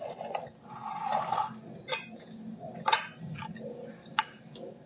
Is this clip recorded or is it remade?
recorded